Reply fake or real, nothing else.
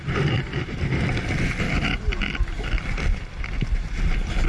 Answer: real